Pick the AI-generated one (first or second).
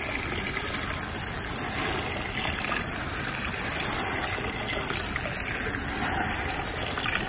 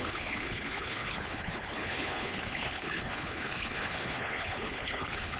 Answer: second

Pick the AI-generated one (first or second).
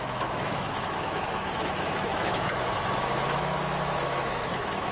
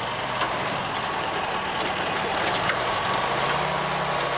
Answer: first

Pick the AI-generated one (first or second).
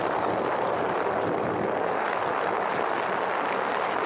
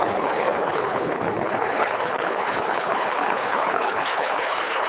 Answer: second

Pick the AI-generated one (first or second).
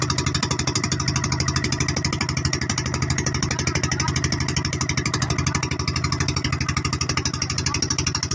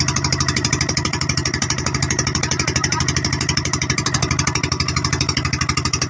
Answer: second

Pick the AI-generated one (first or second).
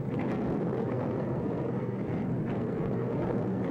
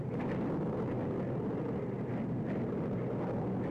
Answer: first